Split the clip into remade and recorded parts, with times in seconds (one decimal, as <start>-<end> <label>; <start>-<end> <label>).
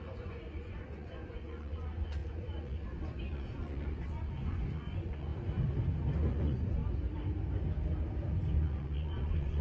0.0-5.3 remade; 5.3-6.3 recorded; 6.3-6.8 remade; 6.8-8.5 recorded; 8.5-9.6 remade